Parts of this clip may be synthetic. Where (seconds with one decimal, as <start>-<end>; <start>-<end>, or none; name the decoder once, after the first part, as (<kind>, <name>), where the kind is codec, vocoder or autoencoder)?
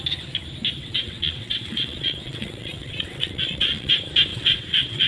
0.8-3.9 (vocoder, WaveNeXt); 4.3-5.1